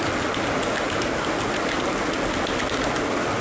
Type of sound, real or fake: real